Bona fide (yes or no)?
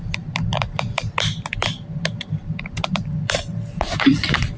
no